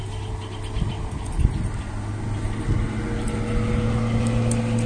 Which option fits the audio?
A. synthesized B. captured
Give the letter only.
B